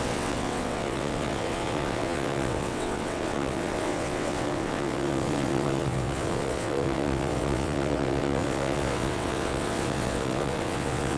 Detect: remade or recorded remade